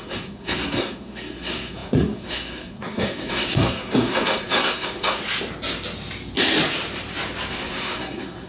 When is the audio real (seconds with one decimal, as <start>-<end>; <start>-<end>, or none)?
5.2-7.5